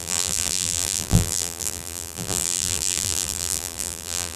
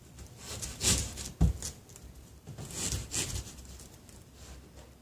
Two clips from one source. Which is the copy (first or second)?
first